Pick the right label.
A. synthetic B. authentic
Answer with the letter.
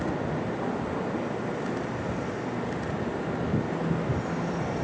B